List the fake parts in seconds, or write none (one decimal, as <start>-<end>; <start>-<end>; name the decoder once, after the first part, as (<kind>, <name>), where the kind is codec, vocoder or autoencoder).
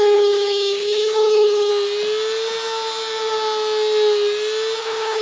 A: 0.0-1.7 (codec, HILCodec); 4.8-5.2